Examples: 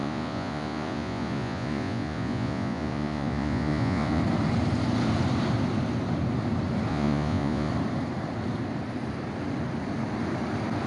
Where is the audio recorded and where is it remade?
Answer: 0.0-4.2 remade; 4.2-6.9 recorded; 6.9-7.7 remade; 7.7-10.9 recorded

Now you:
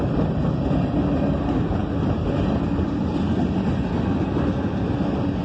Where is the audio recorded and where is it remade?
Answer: 0.0-5.4 recorded